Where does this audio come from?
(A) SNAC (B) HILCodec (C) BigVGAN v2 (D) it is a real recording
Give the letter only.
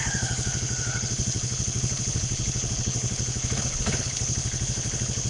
B